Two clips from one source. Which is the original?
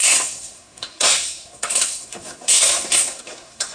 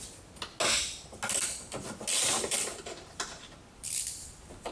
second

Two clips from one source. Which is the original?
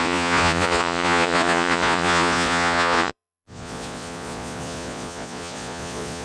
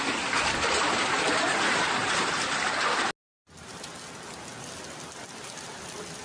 second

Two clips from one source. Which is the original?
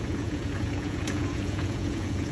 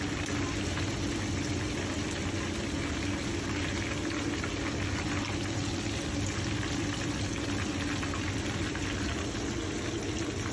second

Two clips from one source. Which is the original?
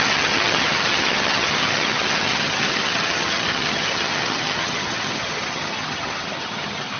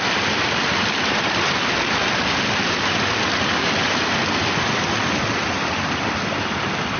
second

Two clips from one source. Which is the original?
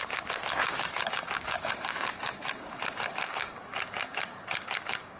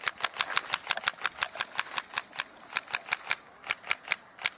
second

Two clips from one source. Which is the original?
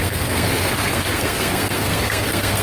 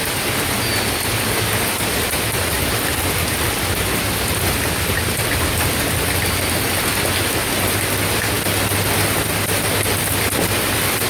second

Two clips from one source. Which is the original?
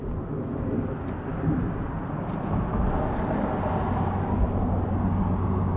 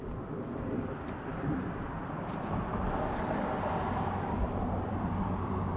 first